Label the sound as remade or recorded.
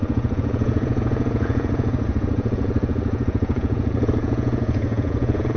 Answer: remade